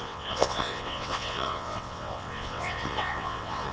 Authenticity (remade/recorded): remade